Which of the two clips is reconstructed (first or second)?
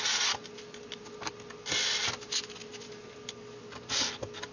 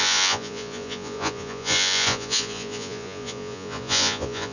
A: second